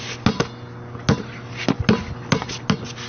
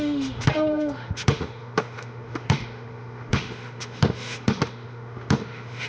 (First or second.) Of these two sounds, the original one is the first